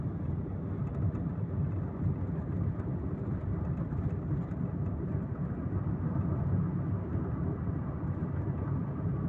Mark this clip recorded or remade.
recorded